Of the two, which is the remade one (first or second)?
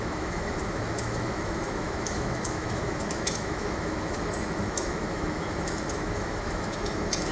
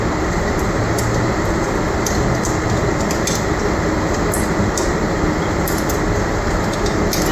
first